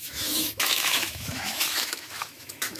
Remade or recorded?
remade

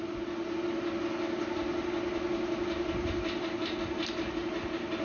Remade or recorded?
recorded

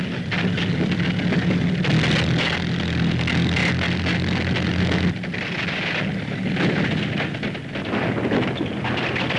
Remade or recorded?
recorded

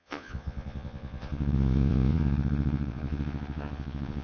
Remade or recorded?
remade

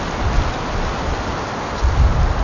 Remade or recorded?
recorded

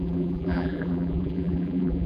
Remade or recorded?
remade